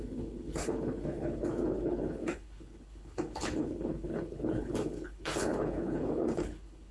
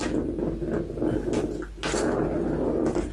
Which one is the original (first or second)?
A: second